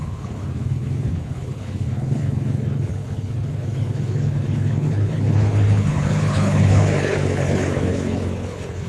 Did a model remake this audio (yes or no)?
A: yes